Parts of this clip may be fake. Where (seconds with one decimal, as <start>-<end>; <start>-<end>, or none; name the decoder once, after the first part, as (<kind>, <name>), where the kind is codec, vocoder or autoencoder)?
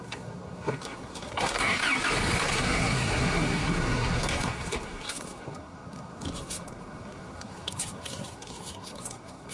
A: 0.0-1.8 (codec, SNAC); 2.6-9.5